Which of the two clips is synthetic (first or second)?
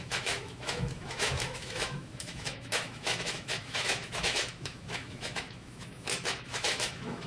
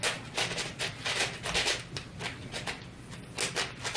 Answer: first